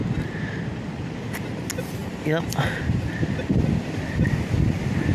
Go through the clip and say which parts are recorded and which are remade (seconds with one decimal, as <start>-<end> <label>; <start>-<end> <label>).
0.0-2.0 recorded; 2.0-3.1 remade; 3.1-5.1 recorded